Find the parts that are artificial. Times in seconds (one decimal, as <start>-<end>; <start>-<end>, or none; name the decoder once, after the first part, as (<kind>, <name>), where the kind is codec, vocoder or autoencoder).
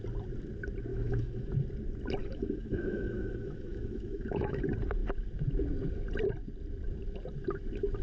0.9-1.5 (autoencoder, DAC-VAE); 2.2-4.6